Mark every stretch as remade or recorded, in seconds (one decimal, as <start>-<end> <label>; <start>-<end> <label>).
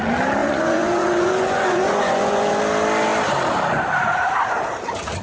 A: 0.0-0.4 recorded; 0.4-2.6 remade; 2.6-5.2 recorded